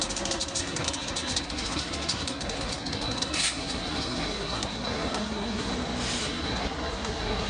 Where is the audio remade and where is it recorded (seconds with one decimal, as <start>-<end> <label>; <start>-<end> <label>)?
0.0-5.7 remade; 5.7-6.2 recorded; 6.2-7.5 remade